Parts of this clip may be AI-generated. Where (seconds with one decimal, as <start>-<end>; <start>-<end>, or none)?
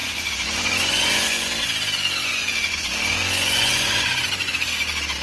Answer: 0.0-1.5; 2.2-4.5